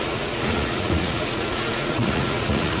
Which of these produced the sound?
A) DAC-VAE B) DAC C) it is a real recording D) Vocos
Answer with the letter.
D